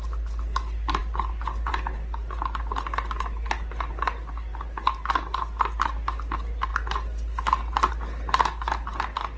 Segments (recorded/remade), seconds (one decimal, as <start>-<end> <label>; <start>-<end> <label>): 0.0-9.4 recorded

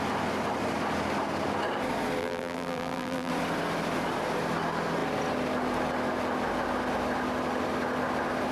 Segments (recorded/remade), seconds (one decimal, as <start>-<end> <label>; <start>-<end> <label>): 0.0-2.2 recorded; 2.2-3.3 remade; 3.3-8.5 recorded